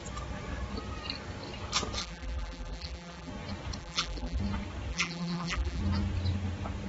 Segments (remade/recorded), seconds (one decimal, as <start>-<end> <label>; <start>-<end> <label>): 0.0-2.0 recorded; 2.0-3.3 remade; 3.3-3.8 recorded; 3.8-4.4 remade; 4.4-4.9 recorded; 4.9-5.8 remade; 5.8-6.9 recorded